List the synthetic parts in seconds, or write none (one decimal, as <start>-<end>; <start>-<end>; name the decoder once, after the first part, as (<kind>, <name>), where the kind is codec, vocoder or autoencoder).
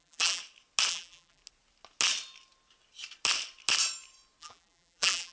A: 0.0-0.4 (vocoder, BigVGAN v2); 0.9-1.4; 4.4-5.3